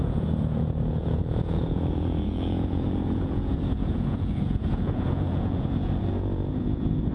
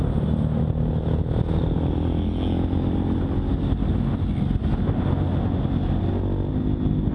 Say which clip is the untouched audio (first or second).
second